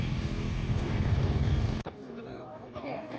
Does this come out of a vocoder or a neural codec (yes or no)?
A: yes